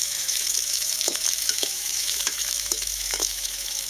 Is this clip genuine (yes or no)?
no